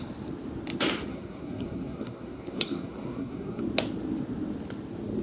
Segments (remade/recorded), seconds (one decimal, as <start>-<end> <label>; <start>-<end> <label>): 0.0-1.1 recorded; 1.1-3.6 remade; 3.6-5.2 recorded

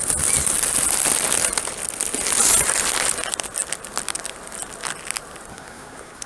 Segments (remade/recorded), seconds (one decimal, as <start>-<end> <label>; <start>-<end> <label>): 0.0-5.5 recorded; 5.5-6.3 remade

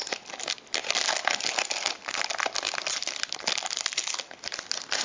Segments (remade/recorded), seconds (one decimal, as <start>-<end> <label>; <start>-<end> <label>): 0.0-5.0 recorded

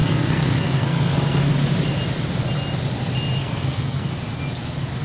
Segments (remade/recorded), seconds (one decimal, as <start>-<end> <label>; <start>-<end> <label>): 0.0-1.5 remade; 1.5-3.4 recorded; 3.4-4.1 remade; 4.1-5.0 recorded

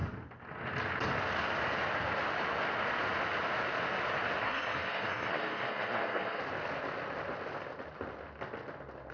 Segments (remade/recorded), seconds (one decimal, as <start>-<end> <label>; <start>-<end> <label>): 0.0-4.4 recorded; 4.4-6.4 remade; 6.4-9.1 recorded

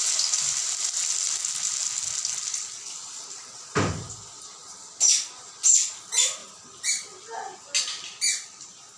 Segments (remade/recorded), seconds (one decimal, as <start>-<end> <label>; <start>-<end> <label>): 0.0-9.0 recorded

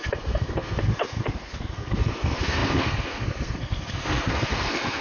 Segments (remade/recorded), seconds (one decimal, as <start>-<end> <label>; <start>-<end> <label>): 0.0-5.0 remade